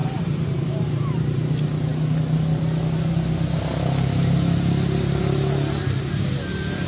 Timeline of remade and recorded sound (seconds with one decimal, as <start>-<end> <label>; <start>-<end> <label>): 0.0-1.5 remade; 1.5-6.9 recorded